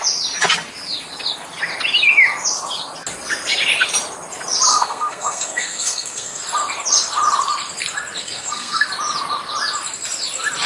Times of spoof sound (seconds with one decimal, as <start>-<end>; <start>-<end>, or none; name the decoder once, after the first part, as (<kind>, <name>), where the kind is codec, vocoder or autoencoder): 4.7-6.4 (codec, SNAC); 8.2-8.9